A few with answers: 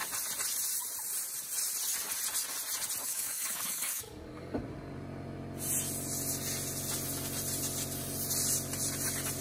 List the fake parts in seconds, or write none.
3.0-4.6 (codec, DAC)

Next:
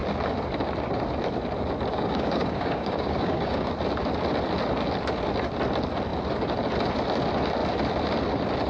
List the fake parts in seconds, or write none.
1.9-3.7 (codec, DAC)

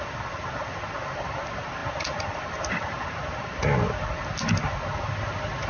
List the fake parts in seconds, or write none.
none